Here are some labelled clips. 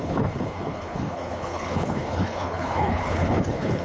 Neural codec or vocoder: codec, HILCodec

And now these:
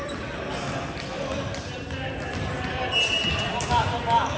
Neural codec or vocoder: vocoder, BigVGAN v2